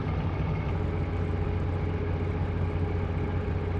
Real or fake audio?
real